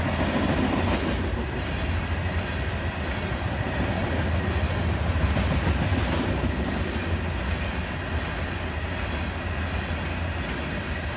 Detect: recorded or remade recorded